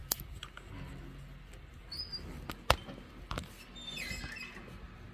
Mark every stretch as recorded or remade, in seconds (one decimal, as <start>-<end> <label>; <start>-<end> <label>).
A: 0.0-5.1 recorded